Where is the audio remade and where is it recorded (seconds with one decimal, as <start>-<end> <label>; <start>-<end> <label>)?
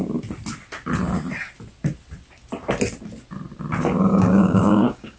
0.0-4.1 recorded; 4.1-5.2 remade